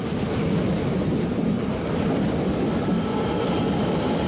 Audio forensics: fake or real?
real